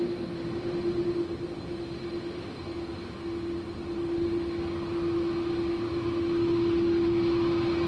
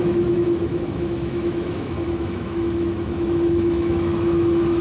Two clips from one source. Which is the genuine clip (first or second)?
first